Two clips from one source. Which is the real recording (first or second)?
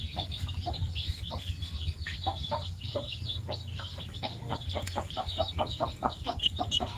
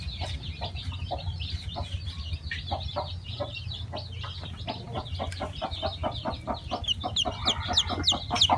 second